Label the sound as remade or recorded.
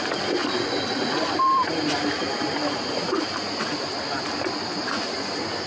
recorded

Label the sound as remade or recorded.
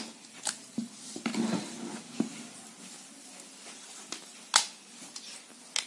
recorded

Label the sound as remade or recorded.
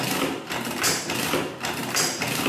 recorded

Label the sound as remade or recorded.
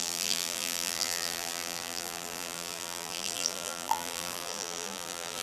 remade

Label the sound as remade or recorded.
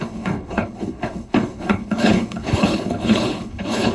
remade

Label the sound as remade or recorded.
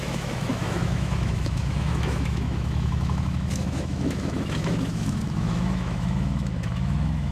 remade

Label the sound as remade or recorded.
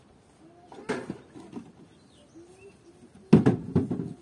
recorded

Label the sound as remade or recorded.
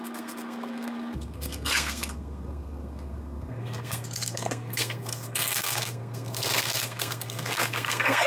remade